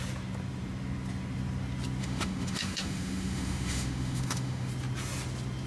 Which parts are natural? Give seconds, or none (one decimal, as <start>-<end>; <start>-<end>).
0.0-2.0; 4.7-5.7